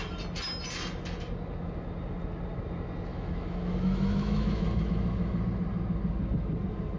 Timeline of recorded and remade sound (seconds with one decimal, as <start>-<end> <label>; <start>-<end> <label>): 0.0-3.1 recorded; 3.1-5.4 remade; 5.4-7.0 recorded